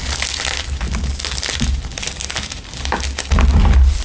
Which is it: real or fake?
real